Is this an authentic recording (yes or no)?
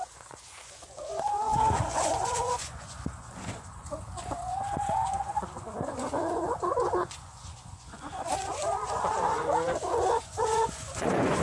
no